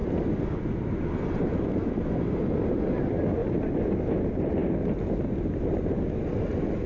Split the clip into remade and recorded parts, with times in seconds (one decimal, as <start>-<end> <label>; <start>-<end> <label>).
0.0-6.9 recorded